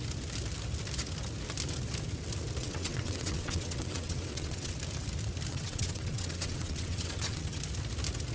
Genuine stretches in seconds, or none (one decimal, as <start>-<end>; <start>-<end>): 0.0-2.6; 4.7-5.5; 7.6-8.3